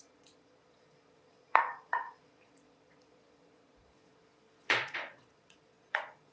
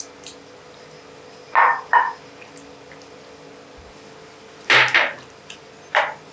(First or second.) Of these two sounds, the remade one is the first